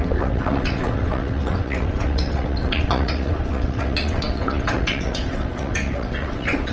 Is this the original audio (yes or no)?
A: no